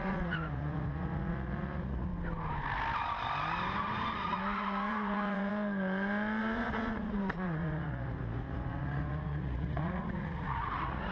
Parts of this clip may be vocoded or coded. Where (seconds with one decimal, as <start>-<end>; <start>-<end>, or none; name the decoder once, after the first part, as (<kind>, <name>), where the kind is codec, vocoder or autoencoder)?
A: 0.0-2.1 (vocoder, Vocos); 4.1-5.5; 6.4-11.1

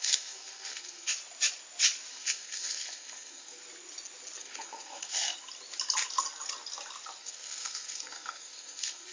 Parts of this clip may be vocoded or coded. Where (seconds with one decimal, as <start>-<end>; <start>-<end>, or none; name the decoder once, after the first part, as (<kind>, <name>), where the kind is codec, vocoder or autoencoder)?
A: 0.0-1.1 (codec, SNAC); 2.1-3.6; 4.4-5.3; 7.2-9.1

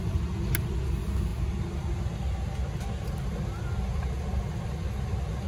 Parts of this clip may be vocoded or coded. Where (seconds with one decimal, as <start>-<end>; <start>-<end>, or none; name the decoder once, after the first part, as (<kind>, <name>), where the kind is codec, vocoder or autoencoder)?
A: none

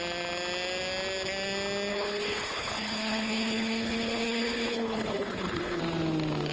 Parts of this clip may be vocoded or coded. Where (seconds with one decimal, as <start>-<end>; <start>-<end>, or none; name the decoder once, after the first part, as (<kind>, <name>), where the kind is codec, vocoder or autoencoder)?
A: 1.9-5.8 (codec, HILCodec)